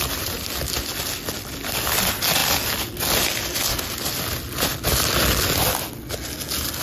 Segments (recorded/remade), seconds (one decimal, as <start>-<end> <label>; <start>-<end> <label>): 0.0-6.8 recorded